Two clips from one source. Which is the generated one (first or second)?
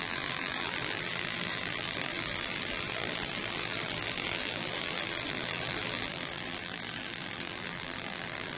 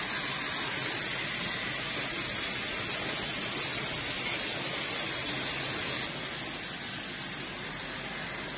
first